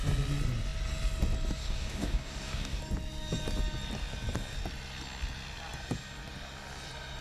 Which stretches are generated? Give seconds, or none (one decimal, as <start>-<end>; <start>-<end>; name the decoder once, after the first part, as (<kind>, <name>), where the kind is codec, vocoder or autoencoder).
1.6-2.8 (codec, DAC)